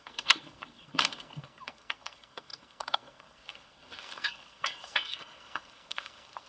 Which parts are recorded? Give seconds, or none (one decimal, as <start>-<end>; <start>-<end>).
none